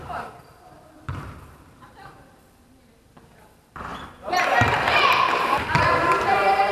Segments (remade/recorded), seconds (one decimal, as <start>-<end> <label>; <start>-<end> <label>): 0.0-3.9 remade; 3.9-4.4 recorded; 4.4-6.7 remade